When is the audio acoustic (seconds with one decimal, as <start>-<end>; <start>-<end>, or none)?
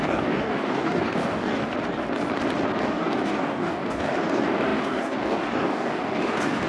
1.6-2.8